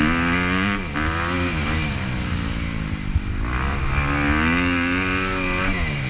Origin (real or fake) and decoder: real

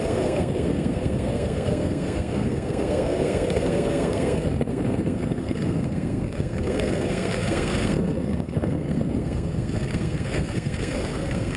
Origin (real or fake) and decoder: fake, codec, SNAC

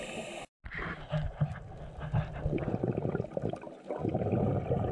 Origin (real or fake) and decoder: real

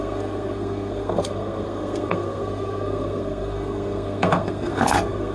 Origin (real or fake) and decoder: fake, codec, SNAC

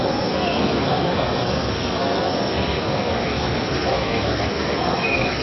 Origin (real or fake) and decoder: fake, codec, SNAC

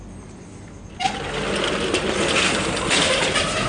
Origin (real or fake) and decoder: real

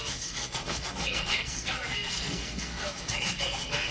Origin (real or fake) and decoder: fake, codec, SNAC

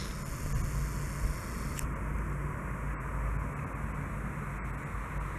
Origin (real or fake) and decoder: real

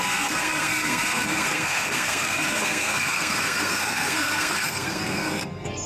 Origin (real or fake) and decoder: fake, codec, SNAC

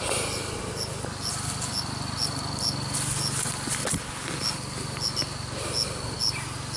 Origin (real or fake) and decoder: real